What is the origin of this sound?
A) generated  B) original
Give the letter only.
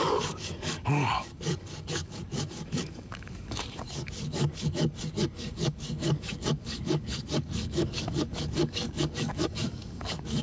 A